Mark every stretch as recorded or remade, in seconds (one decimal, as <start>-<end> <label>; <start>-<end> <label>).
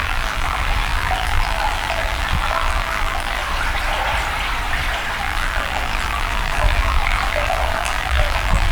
0.0-3.4 remade; 3.4-5.2 recorded; 5.2-8.7 remade